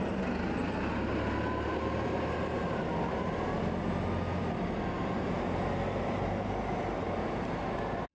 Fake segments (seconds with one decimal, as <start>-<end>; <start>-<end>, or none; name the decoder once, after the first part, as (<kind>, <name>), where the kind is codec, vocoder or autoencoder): 0.6-1.1 (vocoder, BigVGAN v2)